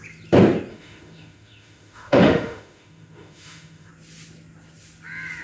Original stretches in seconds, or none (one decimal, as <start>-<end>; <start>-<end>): 0.0-0.7; 3.9-5.4